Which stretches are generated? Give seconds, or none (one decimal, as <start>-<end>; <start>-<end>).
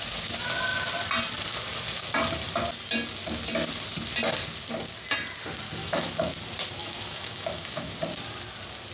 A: 5.8-6.3; 6.8-7.9